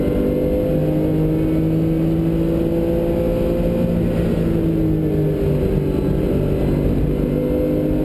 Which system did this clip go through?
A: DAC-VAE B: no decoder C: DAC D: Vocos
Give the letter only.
B